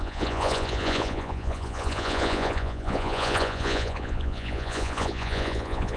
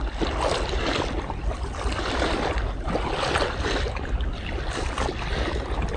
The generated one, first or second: first